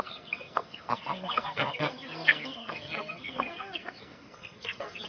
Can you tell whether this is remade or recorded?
remade